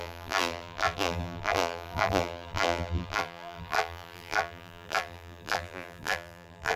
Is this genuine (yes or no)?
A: no